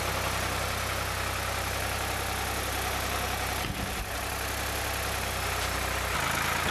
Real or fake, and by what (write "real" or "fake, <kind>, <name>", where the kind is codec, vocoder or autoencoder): real